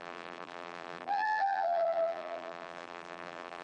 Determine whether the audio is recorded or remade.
remade